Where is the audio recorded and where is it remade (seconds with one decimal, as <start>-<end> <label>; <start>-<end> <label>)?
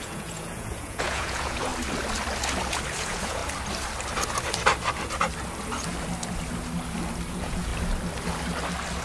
0.0-1.7 remade; 1.7-3.0 recorded; 3.0-3.4 remade; 3.4-7.3 recorded; 7.3-7.7 remade; 7.7-9.0 recorded